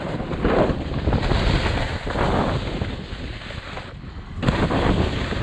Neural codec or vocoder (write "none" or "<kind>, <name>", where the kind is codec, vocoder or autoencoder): none